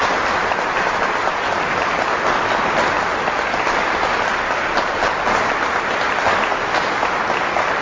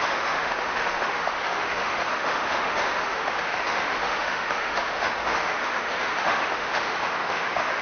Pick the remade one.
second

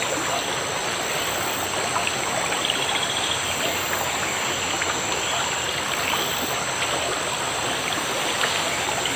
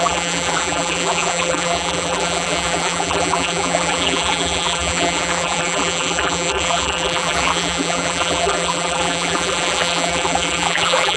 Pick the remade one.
second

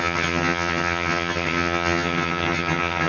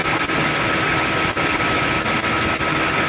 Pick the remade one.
first